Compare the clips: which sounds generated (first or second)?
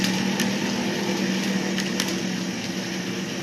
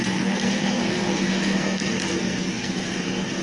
second